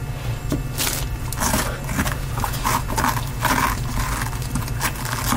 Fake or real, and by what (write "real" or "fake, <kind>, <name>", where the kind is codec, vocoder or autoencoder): real